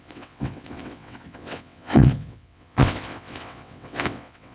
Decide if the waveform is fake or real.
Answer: fake